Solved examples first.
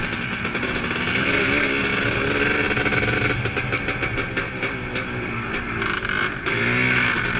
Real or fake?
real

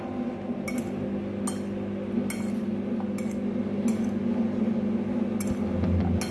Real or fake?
real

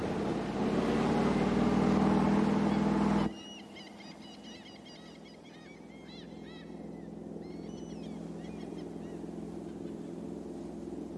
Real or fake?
real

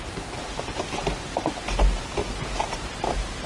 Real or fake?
fake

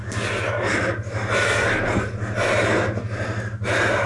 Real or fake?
real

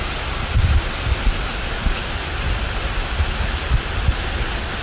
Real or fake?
real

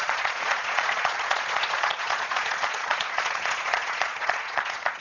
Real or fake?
fake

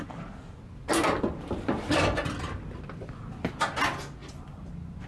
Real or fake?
real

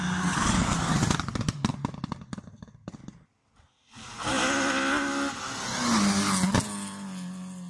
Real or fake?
real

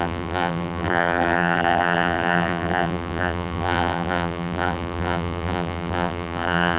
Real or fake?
fake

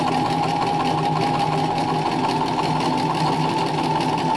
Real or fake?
real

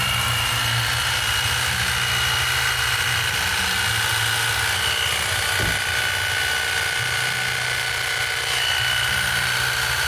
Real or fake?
real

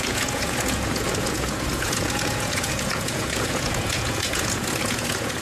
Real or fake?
fake